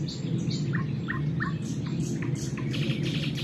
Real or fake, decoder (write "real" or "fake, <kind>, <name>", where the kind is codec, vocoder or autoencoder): real